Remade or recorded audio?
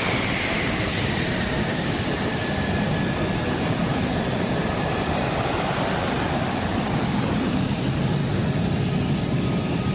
recorded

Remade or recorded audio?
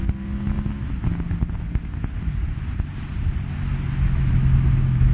recorded